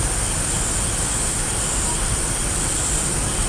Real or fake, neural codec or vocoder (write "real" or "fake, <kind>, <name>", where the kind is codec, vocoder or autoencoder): real